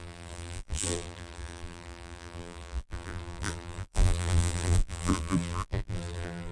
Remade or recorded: remade